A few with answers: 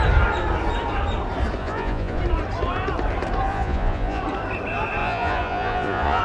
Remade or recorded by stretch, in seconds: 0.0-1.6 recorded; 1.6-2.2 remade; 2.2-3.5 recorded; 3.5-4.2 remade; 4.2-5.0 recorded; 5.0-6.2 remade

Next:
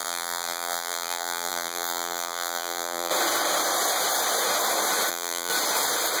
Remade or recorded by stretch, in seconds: 0.0-3.1 remade; 3.1-5.1 recorded; 5.1-5.5 remade; 5.5-6.2 recorded

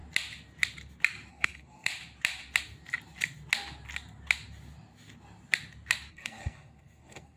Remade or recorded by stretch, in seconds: 0.0-1.3 recorded; 1.3-1.9 remade; 1.9-6.1 recorded; 6.1-7.4 remade

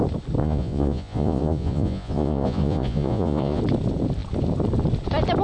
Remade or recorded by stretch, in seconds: 0.0-0.4 recorded; 0.4-3.6 remade; 3.6-5.4 recorded